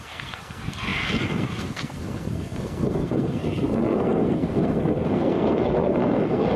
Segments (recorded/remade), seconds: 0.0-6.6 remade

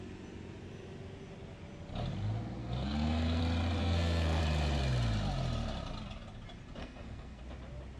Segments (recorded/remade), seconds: 0.0-2.6 recorded; 2.6-3.4 remade; 3.4-3.8 recorded; 3.8-4.4 remade; 4.4-6.8 recorded; 6.8-7.4 remade; 7.4-8.0 recorded

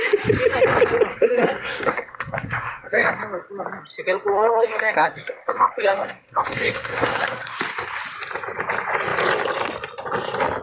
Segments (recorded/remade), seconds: 0.0-1.1 recorded; 1.1-3.2 remade; 3.2-4.3 recorded; 4.3-7.6 remade; 7.6-10.6 recorded